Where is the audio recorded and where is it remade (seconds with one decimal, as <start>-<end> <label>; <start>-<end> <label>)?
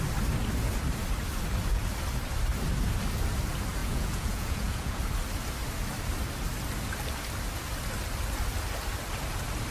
0.0-3.8 recorded; 3.8-5.0 remade; 5.0-9.7 recorded